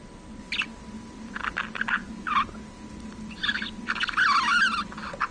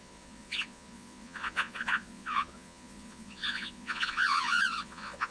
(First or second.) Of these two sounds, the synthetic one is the second